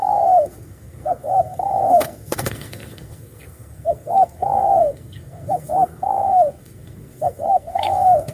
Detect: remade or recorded remade